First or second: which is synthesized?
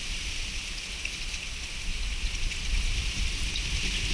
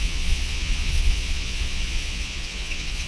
second